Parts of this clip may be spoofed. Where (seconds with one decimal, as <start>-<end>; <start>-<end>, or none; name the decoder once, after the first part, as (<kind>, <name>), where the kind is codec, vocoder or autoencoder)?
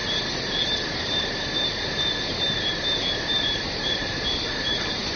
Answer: none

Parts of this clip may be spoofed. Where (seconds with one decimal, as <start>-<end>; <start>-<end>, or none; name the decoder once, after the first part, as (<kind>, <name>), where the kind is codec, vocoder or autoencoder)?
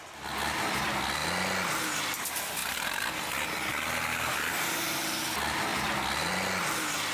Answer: 2.6-3.2 (vocoder, BigVGAN v2)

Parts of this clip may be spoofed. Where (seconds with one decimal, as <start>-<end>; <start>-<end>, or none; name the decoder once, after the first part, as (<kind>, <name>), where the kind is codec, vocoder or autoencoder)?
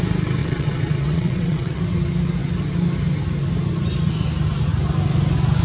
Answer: 0.4-1.8 (vocoder, WaveNeXt)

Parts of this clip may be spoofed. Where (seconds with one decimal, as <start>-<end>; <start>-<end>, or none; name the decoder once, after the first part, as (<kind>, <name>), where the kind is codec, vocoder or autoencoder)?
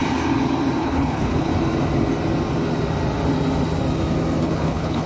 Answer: 0.8-1.5 (codec, HILCodec); 4.4-5.1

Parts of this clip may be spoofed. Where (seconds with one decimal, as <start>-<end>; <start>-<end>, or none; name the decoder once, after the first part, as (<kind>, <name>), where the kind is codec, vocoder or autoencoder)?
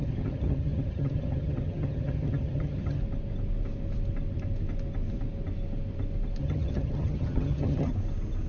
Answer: 0.0-3.0 (vocoder, HiFi-GAN); 6.4-7.9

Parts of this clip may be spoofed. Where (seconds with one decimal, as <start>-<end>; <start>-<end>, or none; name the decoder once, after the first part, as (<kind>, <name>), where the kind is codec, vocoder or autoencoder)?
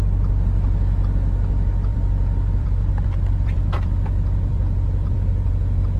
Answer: 1.9-5.5 (vocoder, BigVGAN v2)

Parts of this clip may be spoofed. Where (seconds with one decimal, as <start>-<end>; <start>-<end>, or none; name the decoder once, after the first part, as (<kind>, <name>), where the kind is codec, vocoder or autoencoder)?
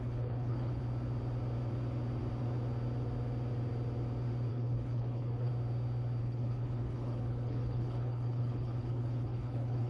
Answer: 0.0-0.8 (codec, HILCodec); 4.5-5.5; 6.2-9.9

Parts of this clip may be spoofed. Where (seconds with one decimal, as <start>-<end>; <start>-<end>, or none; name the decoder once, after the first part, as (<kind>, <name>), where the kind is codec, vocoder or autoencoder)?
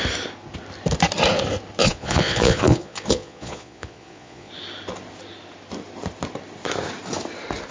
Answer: 1.8-4.5 (vocoder, Vocos)